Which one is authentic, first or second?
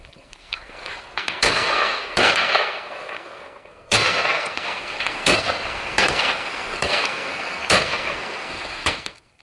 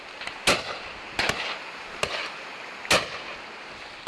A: second